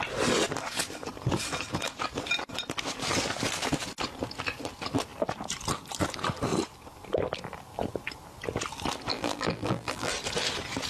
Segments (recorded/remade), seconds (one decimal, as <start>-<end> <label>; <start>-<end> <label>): 0.0-9.1 recorded; 9.1-10.1 remade; 10.1-10.9 recorded